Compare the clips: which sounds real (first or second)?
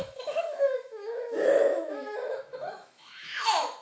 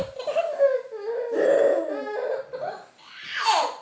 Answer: second